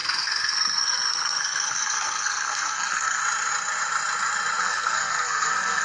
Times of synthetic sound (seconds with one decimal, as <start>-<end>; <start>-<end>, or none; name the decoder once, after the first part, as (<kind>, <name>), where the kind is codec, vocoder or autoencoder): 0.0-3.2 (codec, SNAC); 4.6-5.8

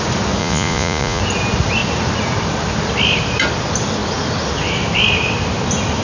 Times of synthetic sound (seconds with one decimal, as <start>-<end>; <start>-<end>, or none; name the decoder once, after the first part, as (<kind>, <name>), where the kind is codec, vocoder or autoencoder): 0.4-1.2 (vocoder, Vocos)

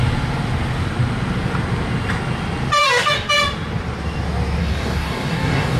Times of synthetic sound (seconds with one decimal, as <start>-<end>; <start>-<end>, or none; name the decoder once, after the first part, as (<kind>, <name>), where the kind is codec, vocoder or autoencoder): 2.8-3.3 (codec, DAC); 4.6-5.8

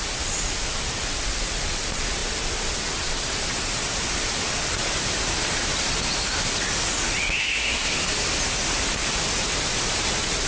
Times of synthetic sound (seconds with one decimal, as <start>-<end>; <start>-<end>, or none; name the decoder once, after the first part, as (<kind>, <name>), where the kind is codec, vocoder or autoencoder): 7.4-8.0 (codec, SNAC)